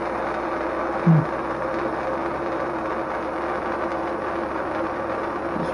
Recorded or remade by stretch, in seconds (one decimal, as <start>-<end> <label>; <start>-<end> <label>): 0.0-5.7 recorded